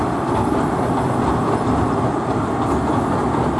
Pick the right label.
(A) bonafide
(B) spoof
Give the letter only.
A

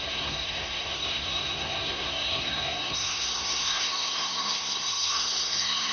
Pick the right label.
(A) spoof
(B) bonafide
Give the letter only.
A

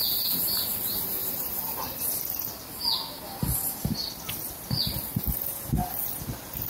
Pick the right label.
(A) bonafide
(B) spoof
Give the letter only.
A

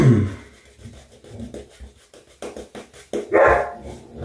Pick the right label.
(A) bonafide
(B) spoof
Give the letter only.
A